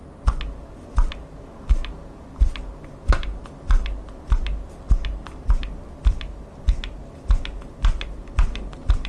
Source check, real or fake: real